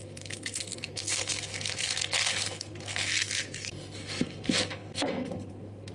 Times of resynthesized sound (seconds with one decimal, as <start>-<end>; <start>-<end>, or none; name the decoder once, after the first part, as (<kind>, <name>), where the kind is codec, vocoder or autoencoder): 0.0-5.9 (codec, SNAC)